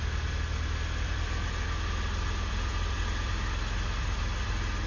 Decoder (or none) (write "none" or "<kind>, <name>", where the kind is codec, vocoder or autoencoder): none